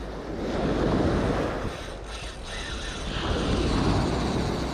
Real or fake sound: real